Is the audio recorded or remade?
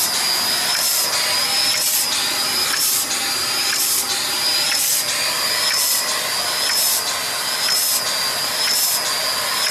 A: recorded